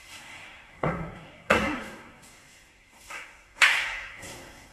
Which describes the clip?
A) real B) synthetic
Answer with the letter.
B